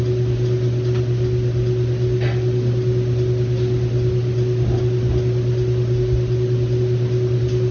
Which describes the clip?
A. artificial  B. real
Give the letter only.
B